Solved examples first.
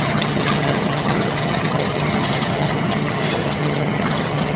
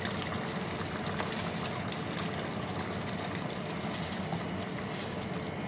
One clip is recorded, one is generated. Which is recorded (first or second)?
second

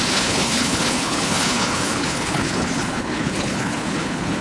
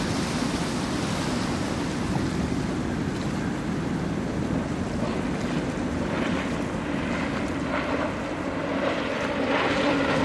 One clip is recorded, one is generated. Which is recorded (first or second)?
second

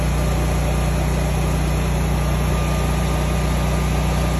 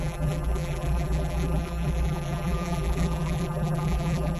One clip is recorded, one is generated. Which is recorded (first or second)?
first